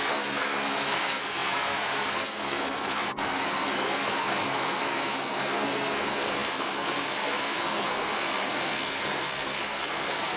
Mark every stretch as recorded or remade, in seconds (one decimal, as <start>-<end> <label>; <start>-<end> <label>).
0.0-10.4 remade